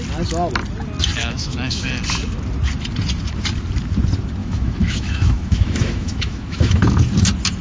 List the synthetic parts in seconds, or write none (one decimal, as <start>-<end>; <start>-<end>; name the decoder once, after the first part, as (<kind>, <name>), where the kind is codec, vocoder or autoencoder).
1.2-1.9 (autoencoder, DAC-VAE); 4.4-6.8